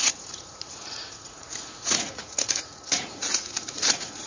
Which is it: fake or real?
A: fake